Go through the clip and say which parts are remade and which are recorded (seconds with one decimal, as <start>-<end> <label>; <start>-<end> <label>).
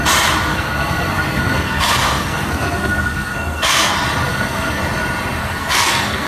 0.0-0.5 recorded; 0.5-3.9 remade; 3.9-4.3 recorded; 4.3-4.8 remade; 4.8-5.4 recorded; 5.4-6.3 remade